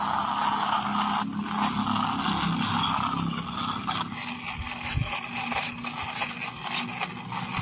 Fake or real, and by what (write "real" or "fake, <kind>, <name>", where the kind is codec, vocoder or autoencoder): real